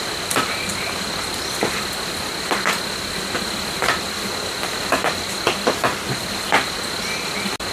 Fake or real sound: real